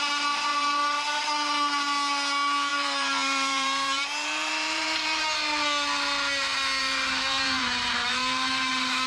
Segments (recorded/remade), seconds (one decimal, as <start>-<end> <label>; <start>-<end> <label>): 0.0-0.5 recorded; 0.5-1.2 remade; 1.2-2.7 recorded; 2.7-5.2 remade; 5.2-6.8 recorded; 6.8-8.7 remade; 8.7-9.1 recorded